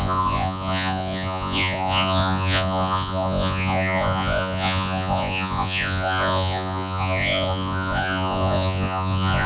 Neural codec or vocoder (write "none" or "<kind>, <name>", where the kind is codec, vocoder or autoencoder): vocoder, Vocos